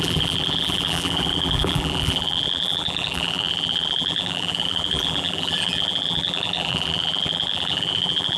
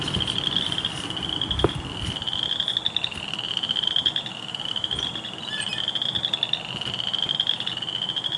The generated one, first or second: first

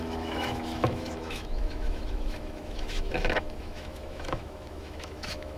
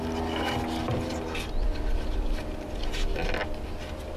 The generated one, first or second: first